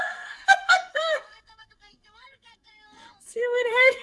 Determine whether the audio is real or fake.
fake